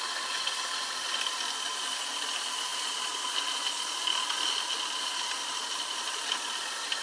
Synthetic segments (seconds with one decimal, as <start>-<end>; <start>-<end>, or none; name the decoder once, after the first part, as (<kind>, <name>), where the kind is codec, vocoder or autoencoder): none